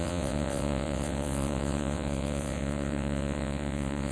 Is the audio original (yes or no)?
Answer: no